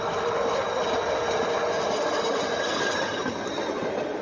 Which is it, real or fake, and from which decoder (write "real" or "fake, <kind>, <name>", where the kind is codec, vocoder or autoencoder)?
real